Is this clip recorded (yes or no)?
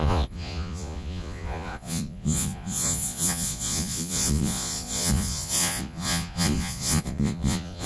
no